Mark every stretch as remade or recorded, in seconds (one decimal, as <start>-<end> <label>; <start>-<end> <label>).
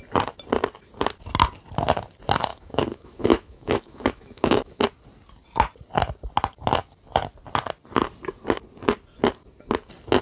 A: 0.0-2.5 recorded; 2.5-4.8 remade; 4.8-10.2 recorded